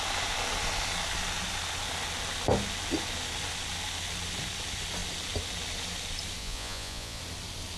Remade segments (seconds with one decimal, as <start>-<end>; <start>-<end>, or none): 6.4-7.2